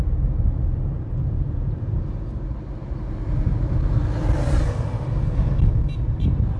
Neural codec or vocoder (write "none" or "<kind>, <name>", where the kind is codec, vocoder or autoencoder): none